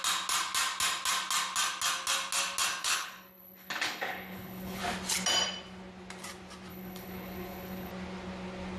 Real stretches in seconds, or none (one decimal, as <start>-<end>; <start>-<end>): 0.0-2.8; 4.8-6.7; 7.9-8.8